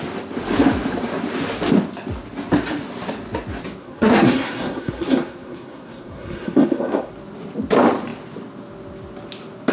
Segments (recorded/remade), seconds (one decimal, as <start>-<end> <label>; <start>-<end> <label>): 0.0-3.8 recorded; 3.8-7.1 remade; 7.1-9.7 recorded